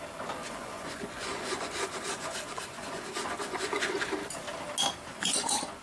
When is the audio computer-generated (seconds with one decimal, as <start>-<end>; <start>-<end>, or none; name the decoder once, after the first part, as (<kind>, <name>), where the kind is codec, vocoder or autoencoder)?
0.4-3.9 (vocoder, Vocos); 5.1-5.8